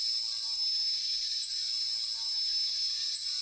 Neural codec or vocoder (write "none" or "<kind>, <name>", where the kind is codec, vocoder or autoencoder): none